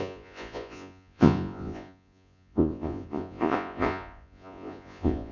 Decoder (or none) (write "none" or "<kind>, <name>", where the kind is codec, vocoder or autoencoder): vocoder, Vocos